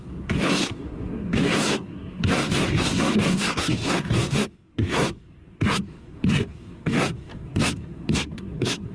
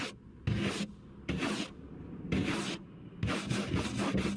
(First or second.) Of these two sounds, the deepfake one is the first